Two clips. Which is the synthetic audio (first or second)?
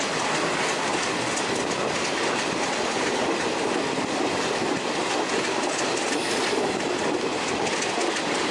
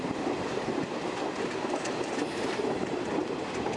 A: second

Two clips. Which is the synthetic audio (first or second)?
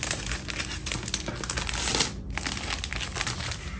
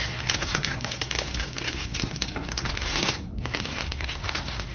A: second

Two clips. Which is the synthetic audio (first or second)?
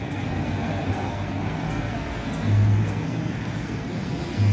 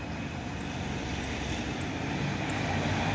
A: first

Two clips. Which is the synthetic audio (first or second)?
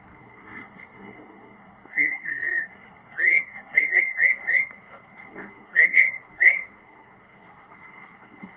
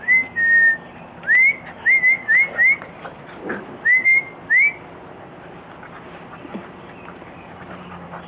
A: first